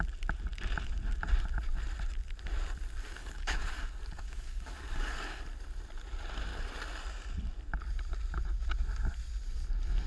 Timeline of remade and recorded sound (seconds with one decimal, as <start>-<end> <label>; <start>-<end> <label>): 0.0-3.2 recorded; 3.2-5.4 remade; 5.4-10.1 recorded